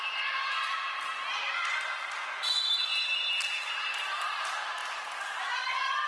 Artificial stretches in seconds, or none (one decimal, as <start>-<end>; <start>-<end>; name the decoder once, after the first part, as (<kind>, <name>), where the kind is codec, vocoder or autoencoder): none